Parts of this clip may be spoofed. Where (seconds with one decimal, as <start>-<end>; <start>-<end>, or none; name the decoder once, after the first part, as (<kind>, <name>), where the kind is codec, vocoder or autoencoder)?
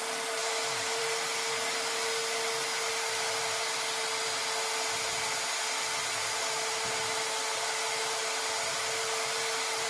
none